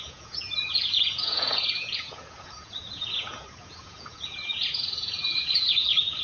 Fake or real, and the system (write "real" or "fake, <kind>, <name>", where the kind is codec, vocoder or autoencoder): fake, vocoder, Vocos